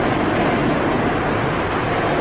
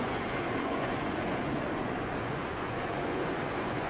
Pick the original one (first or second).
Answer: first